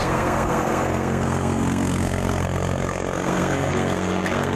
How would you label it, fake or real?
fake